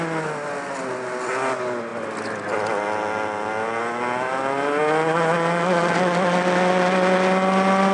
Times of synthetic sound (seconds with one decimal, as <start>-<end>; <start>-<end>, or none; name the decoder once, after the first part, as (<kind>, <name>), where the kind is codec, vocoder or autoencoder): none